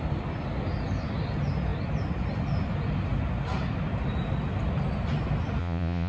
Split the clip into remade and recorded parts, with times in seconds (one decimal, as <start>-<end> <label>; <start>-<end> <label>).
0.0-5.6 recorded; 5.6-6.1 remade